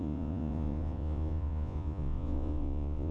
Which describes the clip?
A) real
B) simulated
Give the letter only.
B